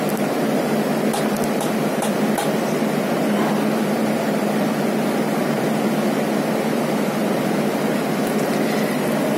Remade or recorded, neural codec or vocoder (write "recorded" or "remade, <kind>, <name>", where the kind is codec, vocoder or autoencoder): recorded